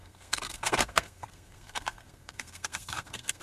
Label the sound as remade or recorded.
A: remade